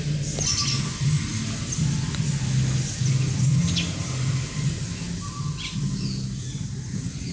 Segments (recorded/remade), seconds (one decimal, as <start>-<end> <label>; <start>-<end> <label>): 0.0-7.3 recorded